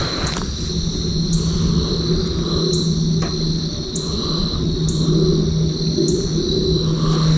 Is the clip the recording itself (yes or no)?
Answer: yes